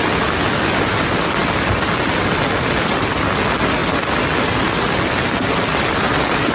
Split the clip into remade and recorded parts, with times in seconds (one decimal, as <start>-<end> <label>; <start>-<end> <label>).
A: 0.0-3.8 recorded; 3.8-4.6 remade; 4.6-6.5 recorded

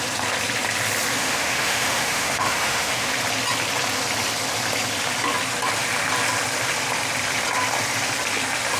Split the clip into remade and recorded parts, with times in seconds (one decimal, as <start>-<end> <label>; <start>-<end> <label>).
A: 0.0-1.2 recorded; 1.2-3.1 remade; 3.1-8.8 recorded